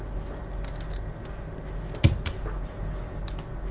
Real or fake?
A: real